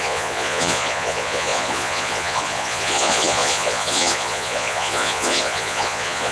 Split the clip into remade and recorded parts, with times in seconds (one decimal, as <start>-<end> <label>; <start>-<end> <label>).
0.0-6.3 remade